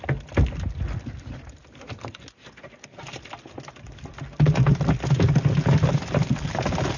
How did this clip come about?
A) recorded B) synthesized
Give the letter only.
A